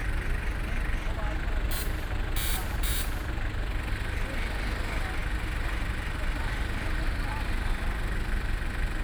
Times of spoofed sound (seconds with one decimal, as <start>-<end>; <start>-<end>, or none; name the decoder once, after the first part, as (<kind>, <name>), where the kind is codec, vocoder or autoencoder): 2.5-3.2 (vocoder, BigVGAN v2)